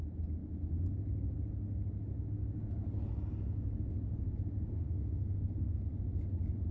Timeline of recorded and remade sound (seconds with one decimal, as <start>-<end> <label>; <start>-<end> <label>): 0.0-4.7 recorded; 4.7-5.9 remade; 5.9-6.7 recorded